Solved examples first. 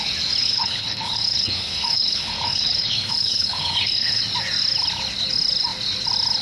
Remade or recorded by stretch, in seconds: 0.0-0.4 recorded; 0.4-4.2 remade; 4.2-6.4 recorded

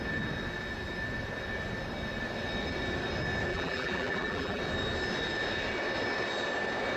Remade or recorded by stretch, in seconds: 0.0-3.5 recorded; 3.5-4.6 remade; 4.6-7.0 recorded